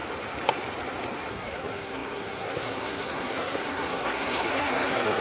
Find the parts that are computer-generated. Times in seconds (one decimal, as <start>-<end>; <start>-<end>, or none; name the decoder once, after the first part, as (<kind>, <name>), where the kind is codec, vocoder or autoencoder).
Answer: 1.3-5.2 (codec, SNAC)